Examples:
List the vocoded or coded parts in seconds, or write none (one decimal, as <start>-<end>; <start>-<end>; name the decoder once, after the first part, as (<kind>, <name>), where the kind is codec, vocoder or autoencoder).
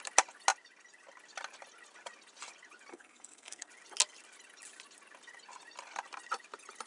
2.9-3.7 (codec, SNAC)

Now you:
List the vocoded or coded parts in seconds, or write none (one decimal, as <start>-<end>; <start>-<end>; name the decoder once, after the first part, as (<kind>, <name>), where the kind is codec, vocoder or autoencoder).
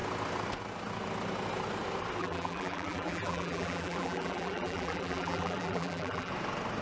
2.2-6.3 (vocoder, BigVGAN v2)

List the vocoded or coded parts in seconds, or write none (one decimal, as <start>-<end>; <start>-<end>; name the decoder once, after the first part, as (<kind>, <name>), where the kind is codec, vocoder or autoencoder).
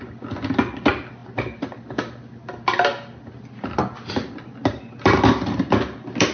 none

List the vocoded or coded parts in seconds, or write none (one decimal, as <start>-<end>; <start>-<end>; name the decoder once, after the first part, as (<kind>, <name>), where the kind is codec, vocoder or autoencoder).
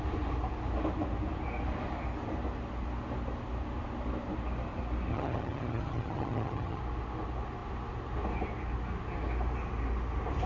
5.1-6.8 (vocoder, HiFi-GAN)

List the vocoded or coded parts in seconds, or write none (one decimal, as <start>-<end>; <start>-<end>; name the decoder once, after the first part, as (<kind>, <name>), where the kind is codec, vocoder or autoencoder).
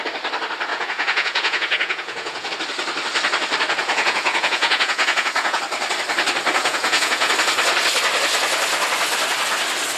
0.7-2.5 (vocoder, Vocos); 3.8-5.6; 6.6-7.3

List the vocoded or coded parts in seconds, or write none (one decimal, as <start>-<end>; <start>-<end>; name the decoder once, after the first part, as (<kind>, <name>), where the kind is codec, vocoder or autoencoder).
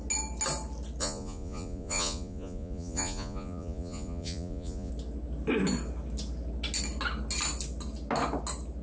1.0-4.9 (vocoder, Vocos)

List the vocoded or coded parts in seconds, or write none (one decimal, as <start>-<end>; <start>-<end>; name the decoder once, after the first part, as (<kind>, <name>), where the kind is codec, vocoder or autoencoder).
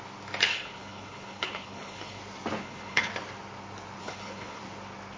0.5-2.2 (codec, HILCodec); 2.6-3.1; 4.0-4.6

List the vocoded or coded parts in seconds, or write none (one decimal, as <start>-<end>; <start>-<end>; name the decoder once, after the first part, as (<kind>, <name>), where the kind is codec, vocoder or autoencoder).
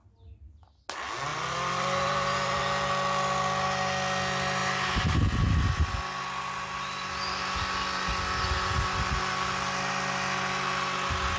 1.3-2.6 (vocoder, BigVGAN v2)